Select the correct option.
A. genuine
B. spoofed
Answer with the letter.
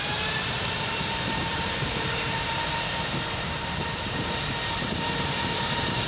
B